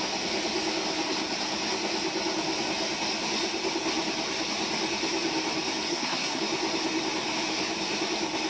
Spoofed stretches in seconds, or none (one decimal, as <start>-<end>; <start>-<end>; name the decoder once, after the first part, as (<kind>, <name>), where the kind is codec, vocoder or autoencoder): 5.9-6.4 (codec, SNAC)